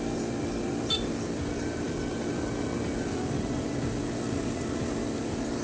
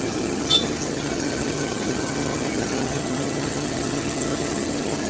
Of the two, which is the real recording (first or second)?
first